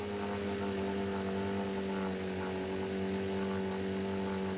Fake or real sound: real